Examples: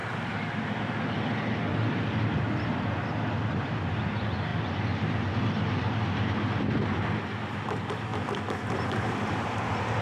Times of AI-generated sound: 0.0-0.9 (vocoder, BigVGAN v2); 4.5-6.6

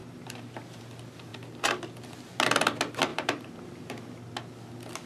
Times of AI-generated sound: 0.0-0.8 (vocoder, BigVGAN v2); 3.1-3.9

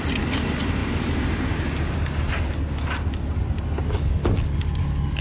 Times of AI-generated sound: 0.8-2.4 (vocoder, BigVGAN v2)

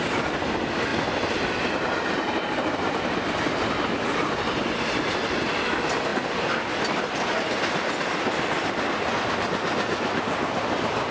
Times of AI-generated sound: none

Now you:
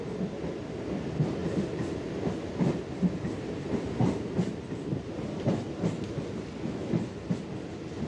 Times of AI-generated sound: 1.4-6.3 (vocoder, BigVGAN v2)